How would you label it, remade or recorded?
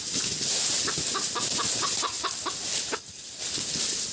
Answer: recorded